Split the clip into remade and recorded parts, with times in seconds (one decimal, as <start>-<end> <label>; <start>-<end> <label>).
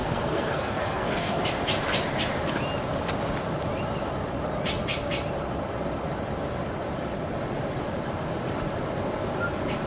0.0-1.4 remade; 1.4-9.9 recorded